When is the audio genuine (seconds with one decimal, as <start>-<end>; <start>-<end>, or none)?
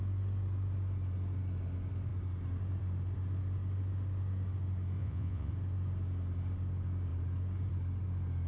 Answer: 0.0-5.0; 5.5-8.5